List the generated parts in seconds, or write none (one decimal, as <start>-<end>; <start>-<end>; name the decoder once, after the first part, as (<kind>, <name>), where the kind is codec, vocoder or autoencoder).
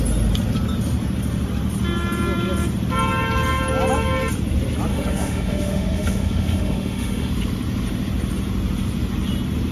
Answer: 4.9-7.3 (autoencoder, DAC-VAE)